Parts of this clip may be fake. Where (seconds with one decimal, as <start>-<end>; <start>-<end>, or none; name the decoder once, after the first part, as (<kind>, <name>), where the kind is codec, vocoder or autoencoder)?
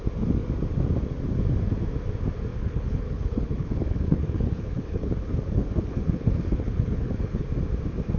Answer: 2.5-7.4 (codec, HILCodec)